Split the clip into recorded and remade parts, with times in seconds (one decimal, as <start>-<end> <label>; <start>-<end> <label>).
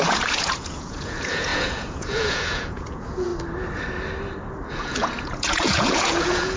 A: 0.0-3.3 remade; 3.3-4.7 recorded; 4.7-6.6 remade